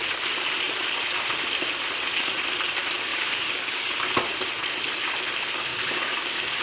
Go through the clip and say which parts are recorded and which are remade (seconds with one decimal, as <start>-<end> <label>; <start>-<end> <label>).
0.0-3.1 recorded; 3.1-4.1 remade; 4.1-5.7 recorded; 5.7-6.6 remade